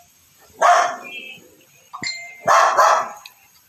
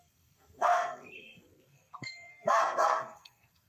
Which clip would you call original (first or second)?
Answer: first